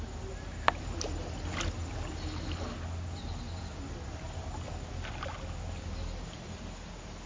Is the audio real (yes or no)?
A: yes